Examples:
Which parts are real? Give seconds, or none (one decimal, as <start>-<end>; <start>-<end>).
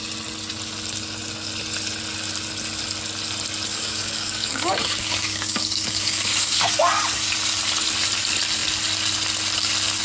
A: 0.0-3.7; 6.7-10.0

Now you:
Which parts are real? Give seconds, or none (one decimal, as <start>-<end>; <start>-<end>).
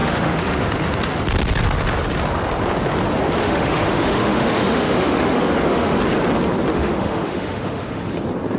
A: 0.7-3.4; 6.0-6.7; 8.0-8.6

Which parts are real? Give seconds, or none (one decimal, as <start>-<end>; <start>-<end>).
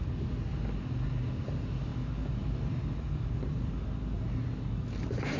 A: 0.0-5.4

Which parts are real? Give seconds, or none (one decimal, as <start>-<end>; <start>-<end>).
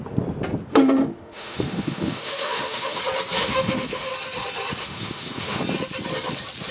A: 0.0-0.7; 3.0-3.4; 4.1-4.8; 5.6-6.7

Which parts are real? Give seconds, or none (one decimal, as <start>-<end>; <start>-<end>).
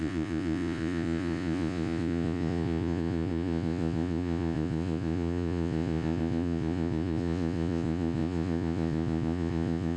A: none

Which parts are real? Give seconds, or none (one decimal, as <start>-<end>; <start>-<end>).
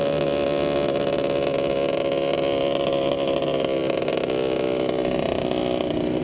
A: 0.0-6.2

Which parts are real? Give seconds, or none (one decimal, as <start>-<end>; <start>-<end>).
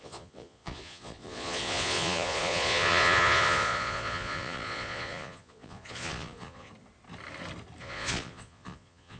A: 6.7-7.8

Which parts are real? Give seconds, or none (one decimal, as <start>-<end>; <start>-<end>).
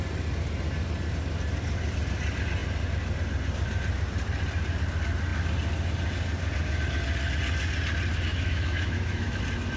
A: 0.0-8.3; 9.4-9.8